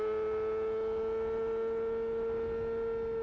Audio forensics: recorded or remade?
recorded